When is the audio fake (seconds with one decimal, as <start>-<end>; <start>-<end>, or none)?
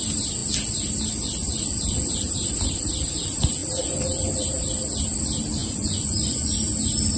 5.6-6.5